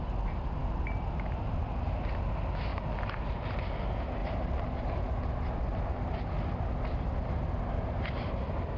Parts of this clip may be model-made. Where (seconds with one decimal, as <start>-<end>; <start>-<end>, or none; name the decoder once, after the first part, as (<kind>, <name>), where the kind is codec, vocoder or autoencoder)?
2.7-3.4 (vocoder, BigVGAN v2); 4.2-5.1